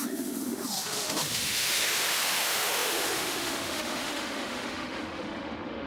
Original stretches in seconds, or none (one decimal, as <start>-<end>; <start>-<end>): none